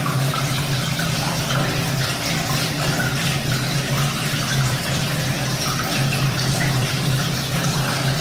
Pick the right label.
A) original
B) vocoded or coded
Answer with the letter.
B